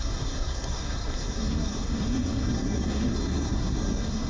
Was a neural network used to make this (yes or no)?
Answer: yes